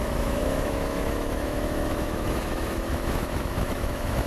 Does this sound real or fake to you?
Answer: fake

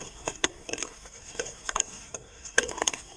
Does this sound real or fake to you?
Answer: fake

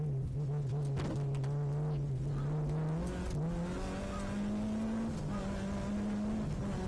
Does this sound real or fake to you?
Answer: real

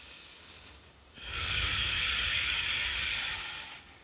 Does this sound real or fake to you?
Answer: fake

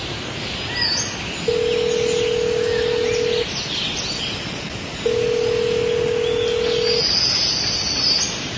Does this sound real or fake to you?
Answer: real